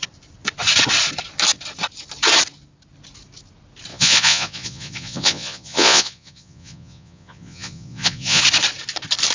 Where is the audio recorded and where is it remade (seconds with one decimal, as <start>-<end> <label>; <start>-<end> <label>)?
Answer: 0.0-3.9 recorded; 3.9-8.4 remade; 8.4-9.3 recorded